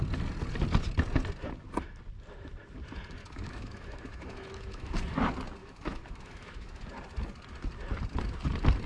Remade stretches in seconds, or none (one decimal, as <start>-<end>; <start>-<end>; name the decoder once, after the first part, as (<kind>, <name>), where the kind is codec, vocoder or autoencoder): 3.2-4.9 (autoencoder, DAC-VAE); 5.6-6.8